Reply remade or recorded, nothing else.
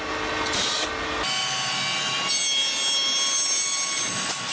recorded